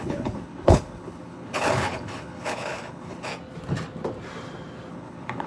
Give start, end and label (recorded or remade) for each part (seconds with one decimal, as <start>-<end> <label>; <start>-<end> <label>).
0.0-3.3 remade; 3.3-4.9 recorded; 4.9-5.5 remade